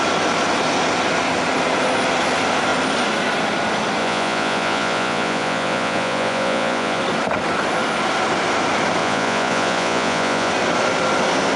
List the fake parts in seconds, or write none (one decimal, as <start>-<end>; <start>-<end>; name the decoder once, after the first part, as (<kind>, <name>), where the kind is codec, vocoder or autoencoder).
4.0-7.0 (vocoder, Vocos); 9.0-10.5